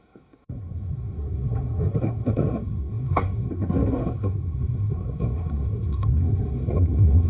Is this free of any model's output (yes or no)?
no